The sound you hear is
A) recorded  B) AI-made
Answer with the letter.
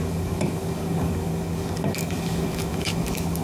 B